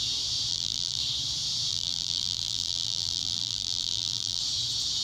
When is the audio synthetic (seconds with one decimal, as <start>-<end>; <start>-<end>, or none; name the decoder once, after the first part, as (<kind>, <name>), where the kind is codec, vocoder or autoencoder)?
0.5-1.0 (vocoder, BigVGAN v2); 1.7-4.4